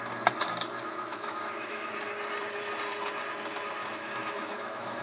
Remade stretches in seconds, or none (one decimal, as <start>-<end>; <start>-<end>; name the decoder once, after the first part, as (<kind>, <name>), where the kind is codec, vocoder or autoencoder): 1.1-1.9 (autoencoder, DAC-VAE); 3.8-5.0